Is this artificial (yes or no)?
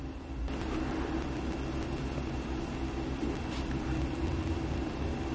no